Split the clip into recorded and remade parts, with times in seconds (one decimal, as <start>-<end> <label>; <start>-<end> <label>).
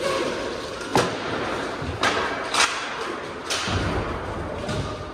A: 0.0-5.1 recorded